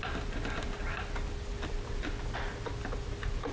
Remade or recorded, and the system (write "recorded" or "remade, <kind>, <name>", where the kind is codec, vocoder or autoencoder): recorded